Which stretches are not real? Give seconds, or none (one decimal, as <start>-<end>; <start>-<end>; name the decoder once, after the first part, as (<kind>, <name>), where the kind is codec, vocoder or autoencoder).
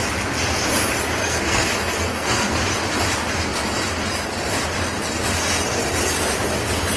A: 1.2-2.7 (codec, SNAC)